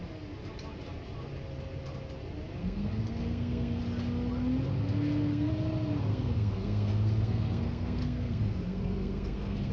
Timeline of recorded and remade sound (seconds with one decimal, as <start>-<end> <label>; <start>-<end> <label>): 0.0-2.6 recorded; 2.6-3.8 remade; 3.8-4.7 recorded; 4.7-5.5 remade; 5.5-6.1 recorded; 6.1-9.7 remade